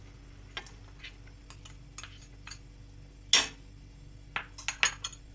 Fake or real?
real